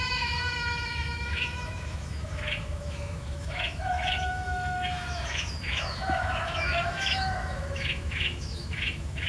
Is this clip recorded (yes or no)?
no